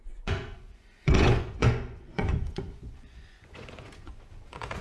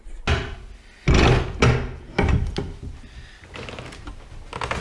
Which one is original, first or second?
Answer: second